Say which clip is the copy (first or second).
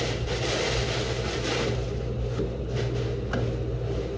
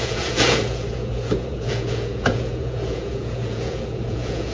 second